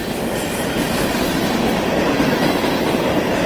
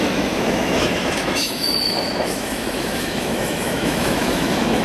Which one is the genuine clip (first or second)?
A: first